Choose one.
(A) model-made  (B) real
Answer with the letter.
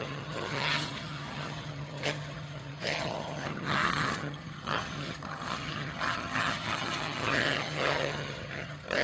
A